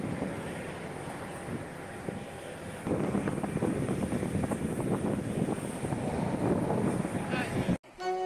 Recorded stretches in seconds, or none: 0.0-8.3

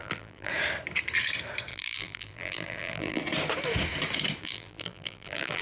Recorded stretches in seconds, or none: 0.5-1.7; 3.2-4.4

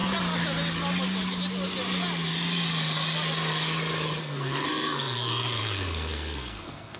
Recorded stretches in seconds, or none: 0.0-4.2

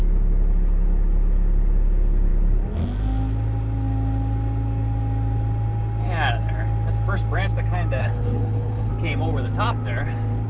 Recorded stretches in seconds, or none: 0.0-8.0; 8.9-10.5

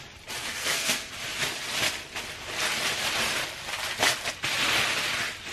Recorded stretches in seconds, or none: 0.0-0.4; 1.1-5.5

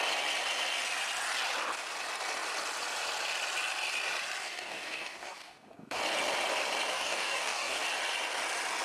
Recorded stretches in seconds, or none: 0.0-4.4; 6.0-6.9; 7.8-8.8

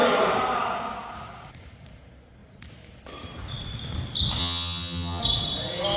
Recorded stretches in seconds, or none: 0.0-4.4; 5.2-6.0